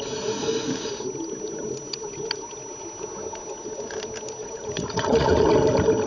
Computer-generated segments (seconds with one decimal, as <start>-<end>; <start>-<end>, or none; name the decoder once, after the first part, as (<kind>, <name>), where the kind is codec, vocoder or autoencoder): 4.4-5.4 (vocoder, Vocos)

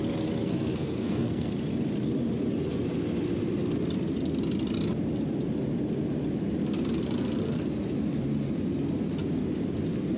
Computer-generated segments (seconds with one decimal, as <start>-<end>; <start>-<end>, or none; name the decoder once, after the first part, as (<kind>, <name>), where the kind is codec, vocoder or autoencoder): 0.4-1.5 (codec, SNAC)